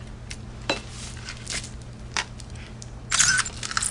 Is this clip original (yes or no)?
yes